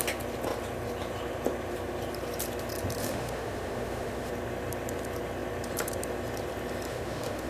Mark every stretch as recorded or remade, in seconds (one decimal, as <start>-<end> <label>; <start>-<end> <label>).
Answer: 0.0-3.0 recorded; 3.0-4.3 remade; 4.3-6.9 recorded; 6.9-7.5 remade